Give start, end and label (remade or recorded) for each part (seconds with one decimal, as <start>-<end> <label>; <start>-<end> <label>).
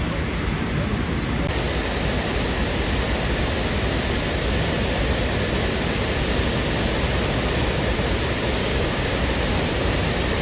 0.0-8.6 recorded; 8.6-9.2 remade; 9.2-10.4 recorded